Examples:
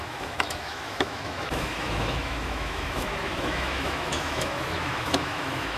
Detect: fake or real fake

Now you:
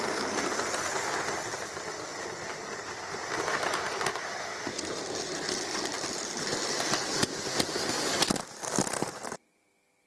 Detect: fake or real real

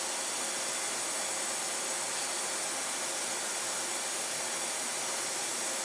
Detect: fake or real real